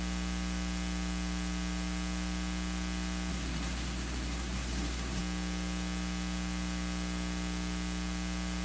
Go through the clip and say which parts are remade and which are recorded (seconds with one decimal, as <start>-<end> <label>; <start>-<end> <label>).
0.0-3.3 recorded; 3.3-5.2 remade; 5.2-8.6 recorded